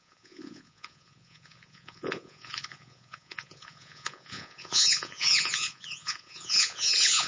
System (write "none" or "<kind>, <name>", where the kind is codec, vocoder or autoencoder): vocoder, Vocos